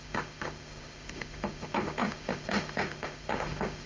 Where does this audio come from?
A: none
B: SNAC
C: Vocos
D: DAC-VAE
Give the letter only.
D